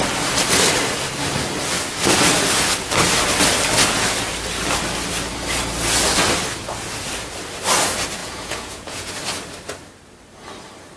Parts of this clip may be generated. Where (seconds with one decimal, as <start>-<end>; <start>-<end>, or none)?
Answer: 8.2-9.1